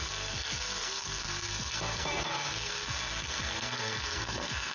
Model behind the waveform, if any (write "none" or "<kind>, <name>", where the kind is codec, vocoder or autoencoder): codec, SNAC